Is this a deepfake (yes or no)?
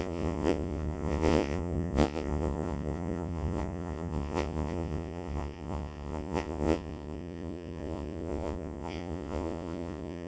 yes